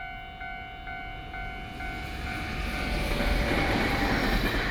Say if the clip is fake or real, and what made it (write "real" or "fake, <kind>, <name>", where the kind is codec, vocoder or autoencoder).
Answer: real